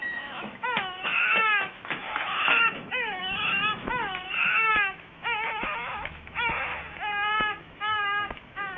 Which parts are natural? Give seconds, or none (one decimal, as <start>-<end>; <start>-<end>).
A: 6.7-7.6